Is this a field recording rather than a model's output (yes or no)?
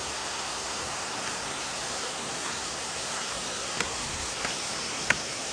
no